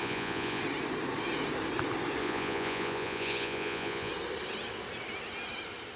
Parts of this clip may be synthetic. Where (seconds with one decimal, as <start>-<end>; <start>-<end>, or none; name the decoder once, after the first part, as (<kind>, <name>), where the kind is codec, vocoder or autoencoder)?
0.0-0.6 (vocoder, Vocos); 2.2-4.1